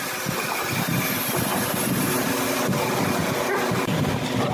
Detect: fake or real real